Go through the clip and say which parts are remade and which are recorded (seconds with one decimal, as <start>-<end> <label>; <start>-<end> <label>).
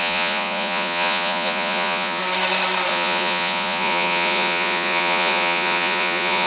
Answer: 0.0-2.2 remade; 2.2-2.9 recorded; 2.9-6.5 remade